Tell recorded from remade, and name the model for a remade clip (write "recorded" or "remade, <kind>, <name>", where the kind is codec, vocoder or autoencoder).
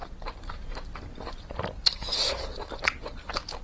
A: recorded